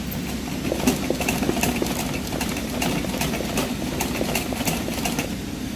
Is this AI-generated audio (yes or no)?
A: no